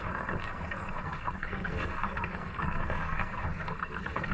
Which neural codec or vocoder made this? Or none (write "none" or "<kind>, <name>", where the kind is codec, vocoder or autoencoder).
codec, SNAC